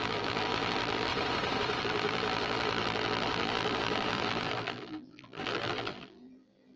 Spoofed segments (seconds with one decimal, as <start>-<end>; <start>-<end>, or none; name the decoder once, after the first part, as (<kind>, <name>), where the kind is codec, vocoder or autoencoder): 0.0-1.1 (vocoder, BigVGAN v2); 1.8-6.8